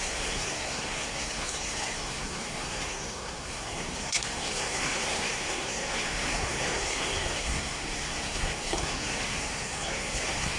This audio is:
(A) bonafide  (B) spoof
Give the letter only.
B